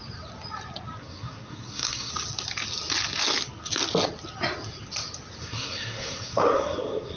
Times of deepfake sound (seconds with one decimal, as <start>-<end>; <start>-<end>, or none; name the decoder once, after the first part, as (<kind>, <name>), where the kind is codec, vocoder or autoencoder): 1.0-2.1 (codec, SNAC); 5.4-7.2